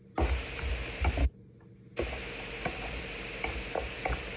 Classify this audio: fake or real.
real